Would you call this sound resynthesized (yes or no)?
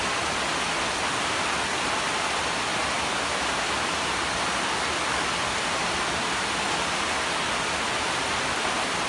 no